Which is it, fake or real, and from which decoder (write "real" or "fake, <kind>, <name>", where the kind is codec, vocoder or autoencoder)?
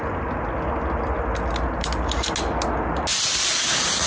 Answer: real